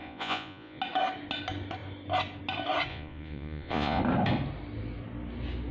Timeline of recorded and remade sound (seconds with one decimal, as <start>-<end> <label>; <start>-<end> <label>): 0.0-0.8 remade; 0.8-2.9 recorded; 2.9-4.0 remade; 4.0-5.7 recorded